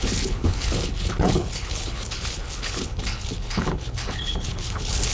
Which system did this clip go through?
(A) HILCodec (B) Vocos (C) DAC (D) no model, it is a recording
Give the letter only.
A